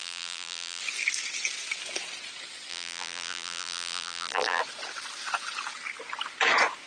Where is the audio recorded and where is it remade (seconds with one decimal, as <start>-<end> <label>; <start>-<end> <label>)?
0.0-0.8 remade; 0.8-2.7 recorded; 2.7-4.6 remade; 4.6-6.9 recorded